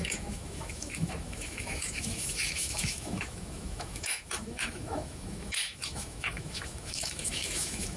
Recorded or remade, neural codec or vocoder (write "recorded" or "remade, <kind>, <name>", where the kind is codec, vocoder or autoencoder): remade, autoencoder, DAC-VAE